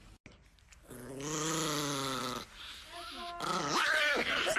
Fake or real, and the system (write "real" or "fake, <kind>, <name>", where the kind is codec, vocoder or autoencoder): real